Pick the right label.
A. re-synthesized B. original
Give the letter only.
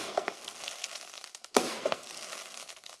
A